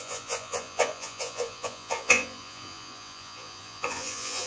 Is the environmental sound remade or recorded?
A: remade